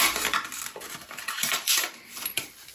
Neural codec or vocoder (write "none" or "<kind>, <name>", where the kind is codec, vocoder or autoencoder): vocoder, BigVGAN v2